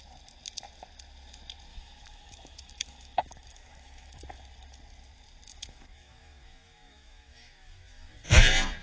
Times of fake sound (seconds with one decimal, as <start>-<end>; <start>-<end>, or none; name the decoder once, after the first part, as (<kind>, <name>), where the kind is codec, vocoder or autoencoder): 1.7-4.2 (autoencoder, DAC-VAE); 5.5-8.4